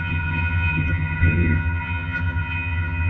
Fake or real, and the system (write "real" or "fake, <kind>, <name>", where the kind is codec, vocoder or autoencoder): fake, vocoder, HiFi-GAN